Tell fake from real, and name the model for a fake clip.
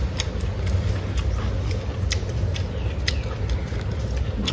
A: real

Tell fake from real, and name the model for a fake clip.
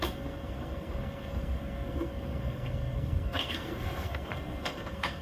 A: fake, codec, SNAC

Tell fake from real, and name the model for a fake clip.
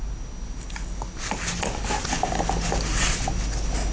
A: real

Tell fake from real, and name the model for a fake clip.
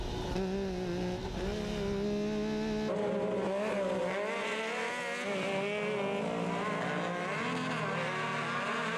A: real